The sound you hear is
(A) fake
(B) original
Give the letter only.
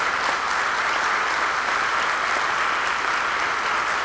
B